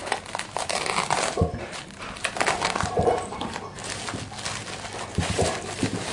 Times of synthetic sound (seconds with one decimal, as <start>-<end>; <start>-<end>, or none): 0.0-3.8; 5.1-6.1